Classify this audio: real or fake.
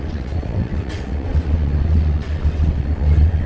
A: fake